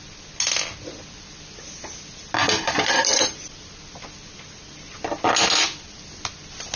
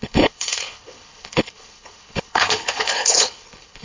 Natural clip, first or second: first